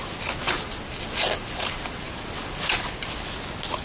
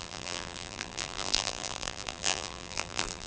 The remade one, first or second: second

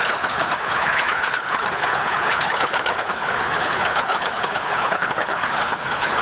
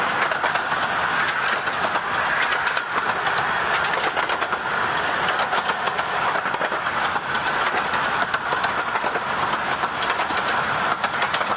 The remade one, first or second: first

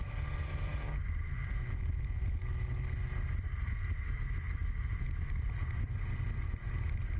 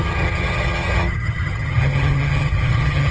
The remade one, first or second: second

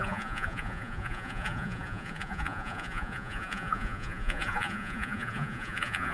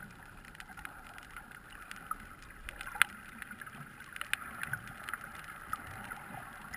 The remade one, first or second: first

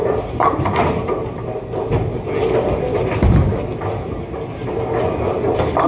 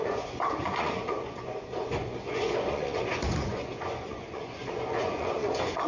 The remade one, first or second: second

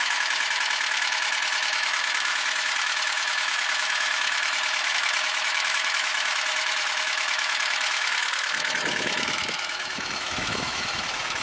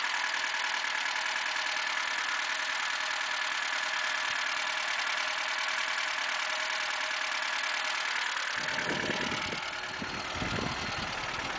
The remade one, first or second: first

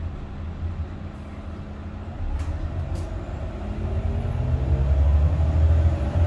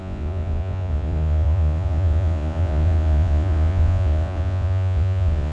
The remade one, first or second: second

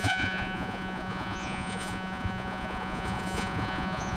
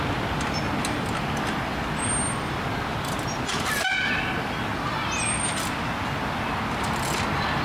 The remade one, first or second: first